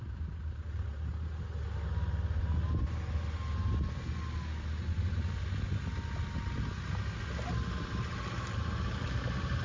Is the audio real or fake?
real